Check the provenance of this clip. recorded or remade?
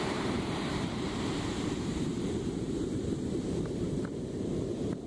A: remade